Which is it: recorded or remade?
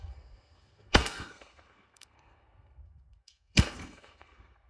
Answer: remade